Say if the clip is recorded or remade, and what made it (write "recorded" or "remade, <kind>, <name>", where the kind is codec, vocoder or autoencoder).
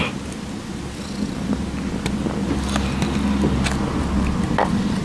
recorded